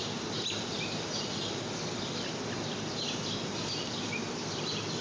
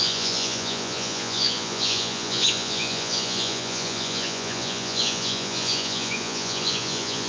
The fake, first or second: second